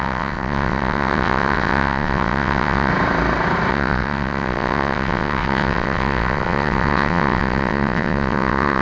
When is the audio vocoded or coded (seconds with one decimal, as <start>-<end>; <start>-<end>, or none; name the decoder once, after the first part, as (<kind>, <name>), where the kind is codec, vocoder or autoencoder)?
0.0-2.9 (vocoder, WaveNeXt); 3.7-8.8